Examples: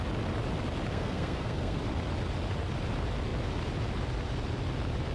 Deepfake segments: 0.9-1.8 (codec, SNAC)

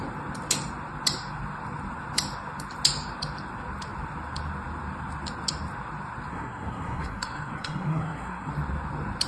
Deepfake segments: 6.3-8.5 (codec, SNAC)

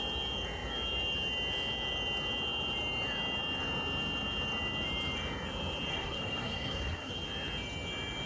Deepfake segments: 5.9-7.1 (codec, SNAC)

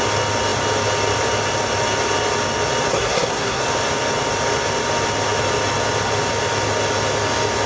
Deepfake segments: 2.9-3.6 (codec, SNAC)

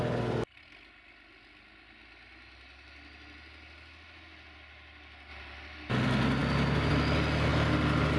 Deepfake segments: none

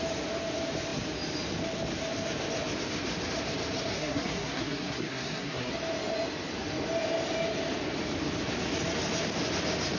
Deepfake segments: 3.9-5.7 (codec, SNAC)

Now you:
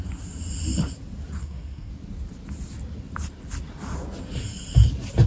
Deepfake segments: 1.4-1.9 (codec, SNAC)

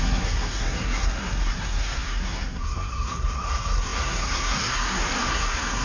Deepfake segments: 0.0-5.8 (codec, SNAC)